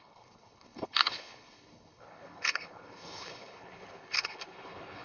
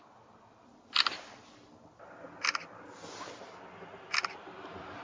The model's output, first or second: first